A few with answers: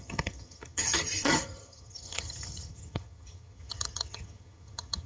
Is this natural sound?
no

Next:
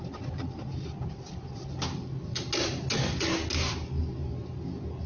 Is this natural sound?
yes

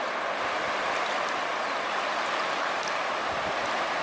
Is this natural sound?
yes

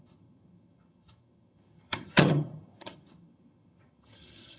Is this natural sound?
no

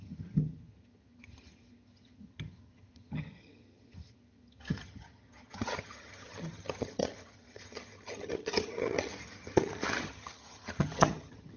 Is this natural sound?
no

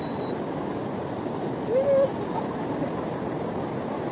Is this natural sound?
yes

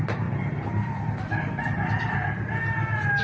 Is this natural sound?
yes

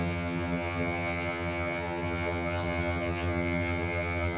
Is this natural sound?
no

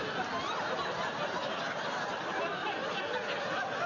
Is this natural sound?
yes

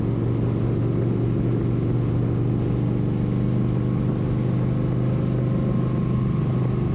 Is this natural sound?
yes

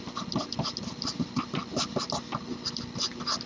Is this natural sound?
yes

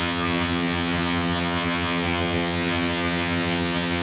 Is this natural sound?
no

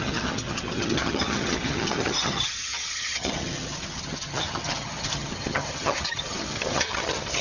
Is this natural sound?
no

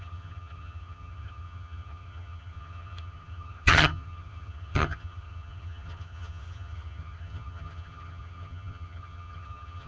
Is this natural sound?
no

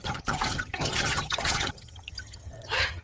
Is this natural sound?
no